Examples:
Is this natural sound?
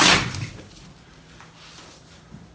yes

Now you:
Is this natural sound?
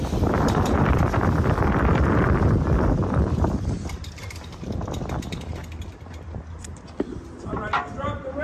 no